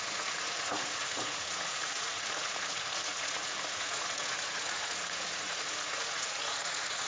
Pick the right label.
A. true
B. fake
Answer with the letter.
B